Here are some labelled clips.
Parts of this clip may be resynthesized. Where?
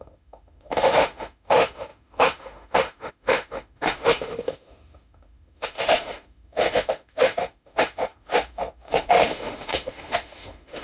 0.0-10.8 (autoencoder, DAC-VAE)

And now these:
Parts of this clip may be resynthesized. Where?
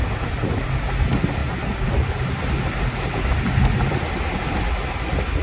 none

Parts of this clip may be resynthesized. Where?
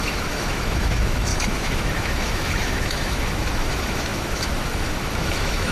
0.0-5.7 (autoencoder, DAC-VAE)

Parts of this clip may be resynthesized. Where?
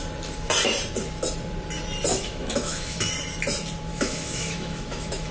2.1-3.1 (autoencoder, DAC-VAE); 3.9-5.3